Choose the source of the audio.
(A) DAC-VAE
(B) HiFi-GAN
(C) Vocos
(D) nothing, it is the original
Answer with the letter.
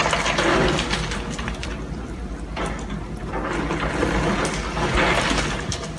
D